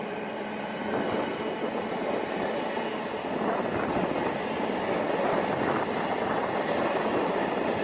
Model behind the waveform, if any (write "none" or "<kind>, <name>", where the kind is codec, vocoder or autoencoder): none